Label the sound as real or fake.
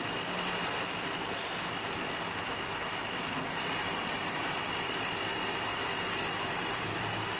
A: real